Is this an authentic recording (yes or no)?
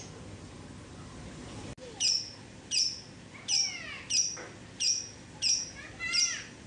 yes